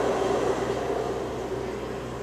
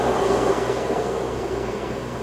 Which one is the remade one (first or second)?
second